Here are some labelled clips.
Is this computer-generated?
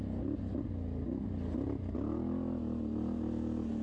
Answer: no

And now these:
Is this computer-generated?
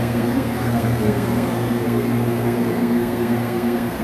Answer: yes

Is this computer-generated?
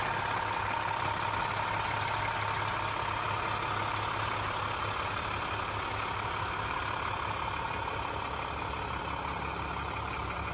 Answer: no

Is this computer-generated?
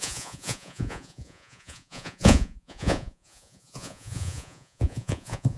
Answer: yes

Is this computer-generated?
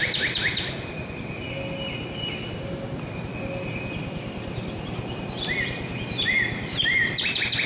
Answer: no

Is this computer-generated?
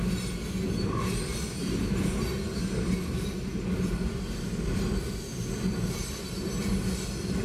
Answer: no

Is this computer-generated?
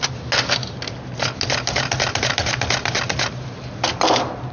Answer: no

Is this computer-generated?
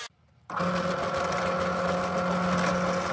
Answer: no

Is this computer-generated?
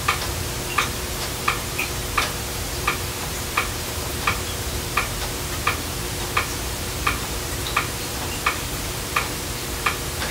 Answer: yes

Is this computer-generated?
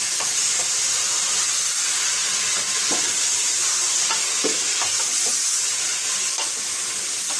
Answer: no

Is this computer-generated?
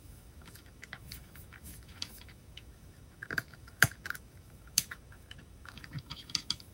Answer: yes